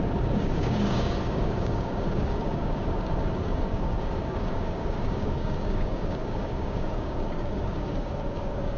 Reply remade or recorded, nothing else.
remade